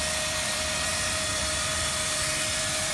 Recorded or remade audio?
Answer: remade